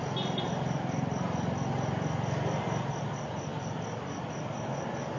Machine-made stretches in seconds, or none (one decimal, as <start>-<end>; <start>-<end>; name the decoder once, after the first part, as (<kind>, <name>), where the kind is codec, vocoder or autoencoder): none